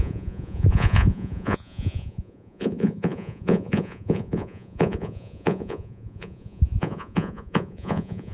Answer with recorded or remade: remade